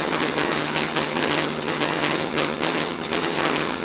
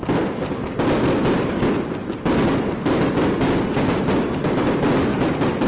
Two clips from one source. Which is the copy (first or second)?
first